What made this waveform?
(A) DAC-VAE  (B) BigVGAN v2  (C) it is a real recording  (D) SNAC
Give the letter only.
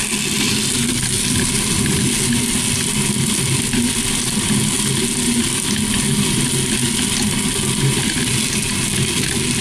C